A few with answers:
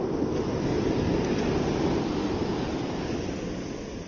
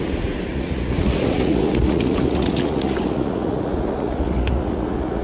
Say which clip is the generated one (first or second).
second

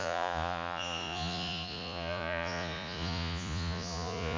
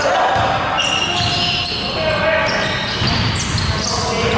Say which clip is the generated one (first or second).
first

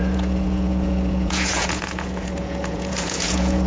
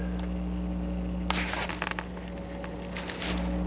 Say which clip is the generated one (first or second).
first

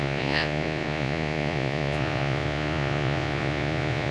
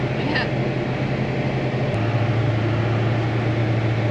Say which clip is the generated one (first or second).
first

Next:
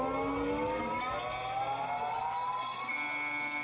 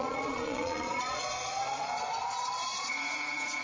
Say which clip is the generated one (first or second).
second